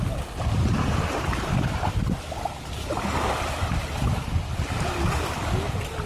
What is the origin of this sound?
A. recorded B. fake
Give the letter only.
A